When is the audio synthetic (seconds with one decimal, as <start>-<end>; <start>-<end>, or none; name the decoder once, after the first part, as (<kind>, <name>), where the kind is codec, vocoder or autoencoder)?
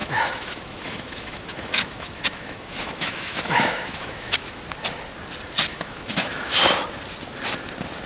0.0-4.6 (autoencoder, DAC-VAE); 5.7-6.6